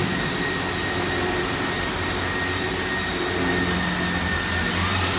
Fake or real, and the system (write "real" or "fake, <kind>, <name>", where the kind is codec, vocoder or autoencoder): real